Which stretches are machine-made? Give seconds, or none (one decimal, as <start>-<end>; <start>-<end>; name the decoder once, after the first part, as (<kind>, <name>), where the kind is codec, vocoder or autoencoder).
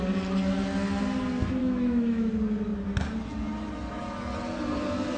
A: 1.6-2.3 (autoencoder, DAC-VAE)